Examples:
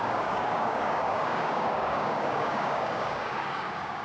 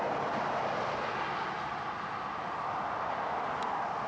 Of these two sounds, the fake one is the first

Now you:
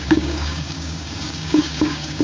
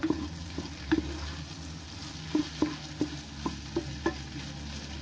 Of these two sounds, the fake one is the first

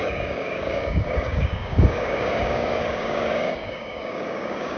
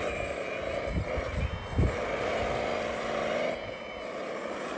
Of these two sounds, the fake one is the first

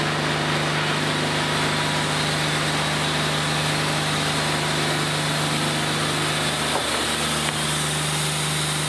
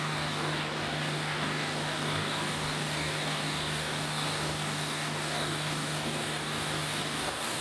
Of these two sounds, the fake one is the second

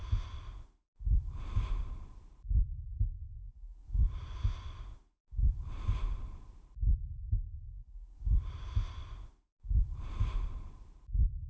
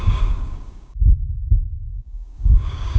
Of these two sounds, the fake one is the second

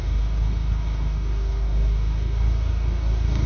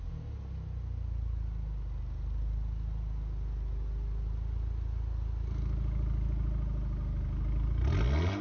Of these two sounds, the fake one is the first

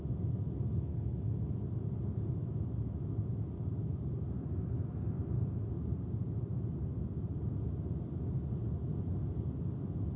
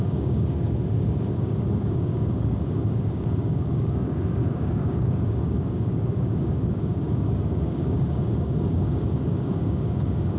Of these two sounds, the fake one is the second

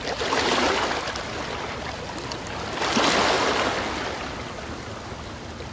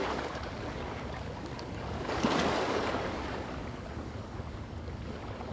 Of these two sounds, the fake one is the second